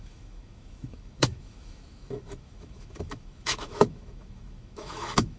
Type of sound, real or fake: fake